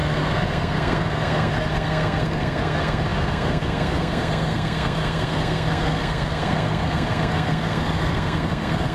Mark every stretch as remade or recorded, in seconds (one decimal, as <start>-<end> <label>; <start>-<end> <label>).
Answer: 0.0-8.9 remade